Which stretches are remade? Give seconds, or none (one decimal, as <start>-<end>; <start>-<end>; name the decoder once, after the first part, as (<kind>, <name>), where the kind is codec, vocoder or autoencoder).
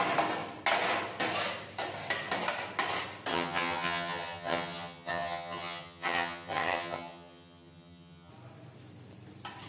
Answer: 3.3-8.3 (vocoder, HiFi-GAN)